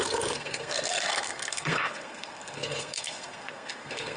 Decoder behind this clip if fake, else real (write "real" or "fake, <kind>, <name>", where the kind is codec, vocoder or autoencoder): fake, codec, SNAC